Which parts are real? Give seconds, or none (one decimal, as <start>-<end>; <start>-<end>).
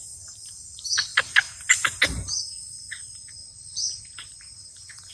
0.0-5.1